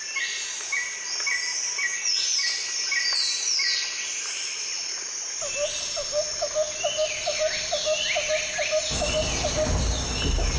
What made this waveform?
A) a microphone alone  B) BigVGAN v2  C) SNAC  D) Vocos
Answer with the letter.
A